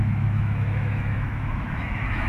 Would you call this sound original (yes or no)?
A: no